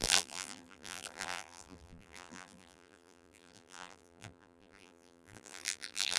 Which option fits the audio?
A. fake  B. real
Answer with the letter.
A